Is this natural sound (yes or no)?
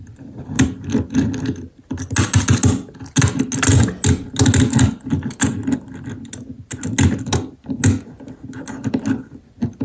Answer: yes